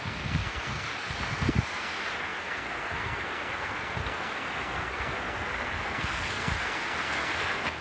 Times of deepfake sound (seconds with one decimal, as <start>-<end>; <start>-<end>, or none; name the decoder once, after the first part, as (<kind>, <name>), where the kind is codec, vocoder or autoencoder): 0.0-7.8 (codec, SNAC)